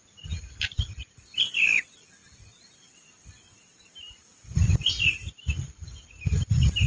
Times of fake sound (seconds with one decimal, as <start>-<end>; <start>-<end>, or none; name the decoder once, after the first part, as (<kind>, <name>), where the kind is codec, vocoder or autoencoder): none